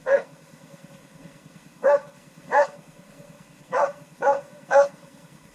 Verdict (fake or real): fake